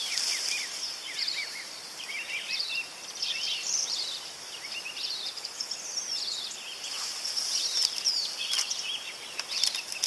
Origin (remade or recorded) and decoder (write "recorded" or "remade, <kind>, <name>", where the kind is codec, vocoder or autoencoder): remade, vocoder, BigVGAN v2